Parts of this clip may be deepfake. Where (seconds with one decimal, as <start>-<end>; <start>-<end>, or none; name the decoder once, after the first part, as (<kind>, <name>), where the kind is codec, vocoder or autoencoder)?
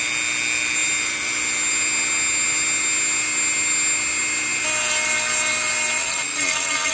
none